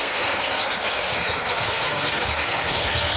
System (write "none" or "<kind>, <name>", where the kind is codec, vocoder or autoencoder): codec, SNAC